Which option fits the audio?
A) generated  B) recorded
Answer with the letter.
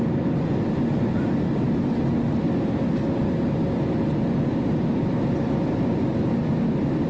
B